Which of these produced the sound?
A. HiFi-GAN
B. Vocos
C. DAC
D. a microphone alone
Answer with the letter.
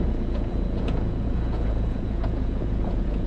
B